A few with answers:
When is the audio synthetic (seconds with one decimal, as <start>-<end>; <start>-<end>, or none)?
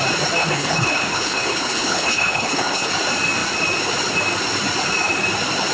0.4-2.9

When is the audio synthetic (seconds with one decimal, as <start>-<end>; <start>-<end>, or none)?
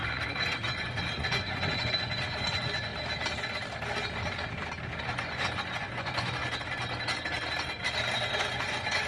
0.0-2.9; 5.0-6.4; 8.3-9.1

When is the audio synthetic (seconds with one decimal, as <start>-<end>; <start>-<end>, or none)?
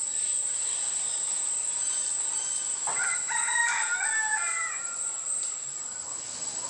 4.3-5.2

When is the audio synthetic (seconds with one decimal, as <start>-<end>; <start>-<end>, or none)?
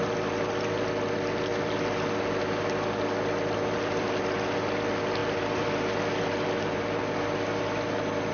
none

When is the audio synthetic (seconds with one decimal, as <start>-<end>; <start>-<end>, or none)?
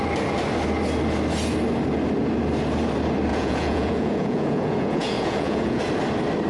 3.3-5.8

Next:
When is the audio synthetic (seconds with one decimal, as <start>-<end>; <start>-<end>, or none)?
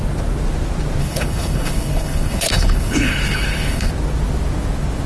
1.0-3.9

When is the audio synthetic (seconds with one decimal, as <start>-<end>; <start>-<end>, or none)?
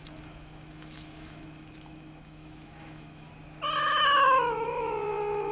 0.0-3.3; 3.8-5.5